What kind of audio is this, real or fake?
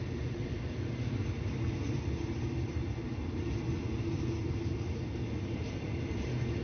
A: real